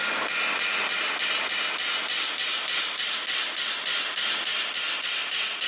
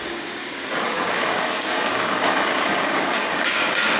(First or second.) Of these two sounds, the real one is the first